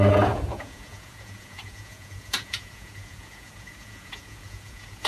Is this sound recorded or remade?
remade